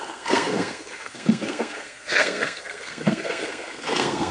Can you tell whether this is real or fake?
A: fake